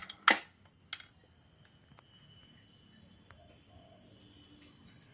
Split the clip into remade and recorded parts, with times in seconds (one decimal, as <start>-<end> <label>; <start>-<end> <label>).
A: 0.0-5.1 recorded